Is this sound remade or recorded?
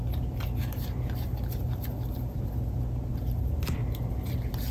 recorded